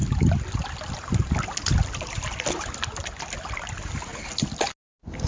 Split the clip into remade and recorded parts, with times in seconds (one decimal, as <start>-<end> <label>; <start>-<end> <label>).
0.0-5.3 recorded